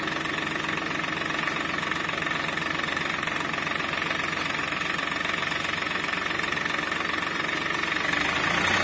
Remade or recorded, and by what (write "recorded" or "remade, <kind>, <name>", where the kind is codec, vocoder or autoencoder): recorded